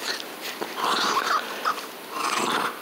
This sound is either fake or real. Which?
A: real